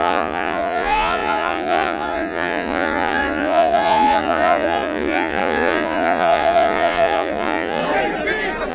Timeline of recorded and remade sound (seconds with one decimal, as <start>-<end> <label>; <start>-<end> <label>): 0.0-7.8 remade; 7.8-8.7 recorded